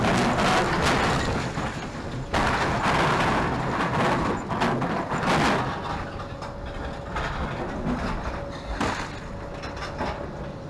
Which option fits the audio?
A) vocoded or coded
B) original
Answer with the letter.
B